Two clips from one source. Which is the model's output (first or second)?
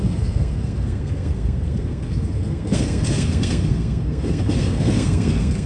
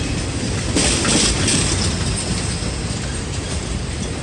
first